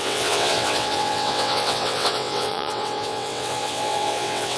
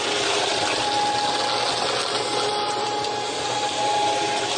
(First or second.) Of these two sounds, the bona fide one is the second